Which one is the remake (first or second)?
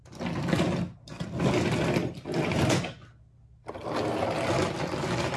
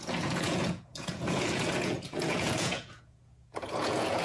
second